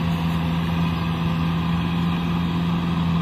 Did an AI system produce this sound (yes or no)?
no